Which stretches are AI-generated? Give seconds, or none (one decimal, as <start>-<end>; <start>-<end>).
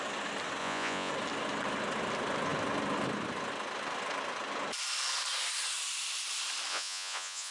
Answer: 0.6-1.1; 6.7-7.5